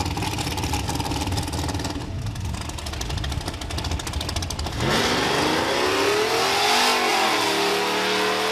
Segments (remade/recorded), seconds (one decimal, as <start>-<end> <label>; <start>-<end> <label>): 0.0-8.5 recorded